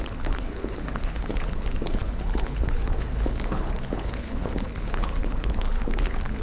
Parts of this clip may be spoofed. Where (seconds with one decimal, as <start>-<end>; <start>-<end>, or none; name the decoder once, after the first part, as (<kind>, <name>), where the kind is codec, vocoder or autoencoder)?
0.0-6.4 (codec, HILCodec)